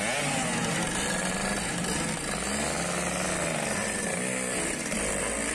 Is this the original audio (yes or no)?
yes